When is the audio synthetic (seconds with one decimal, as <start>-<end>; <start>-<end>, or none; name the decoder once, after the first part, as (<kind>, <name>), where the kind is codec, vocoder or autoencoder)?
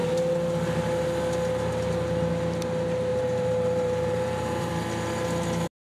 3.1-4.7 (vocoder, BigVGAN v2)